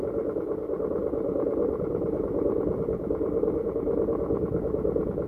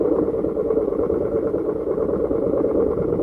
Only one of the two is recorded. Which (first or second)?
first